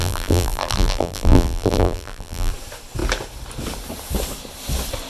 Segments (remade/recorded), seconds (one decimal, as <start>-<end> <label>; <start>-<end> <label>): 0.0-2.5 remade; 2.5-5.1 recorded